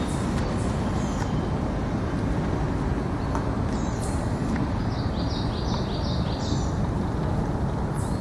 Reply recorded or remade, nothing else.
recorded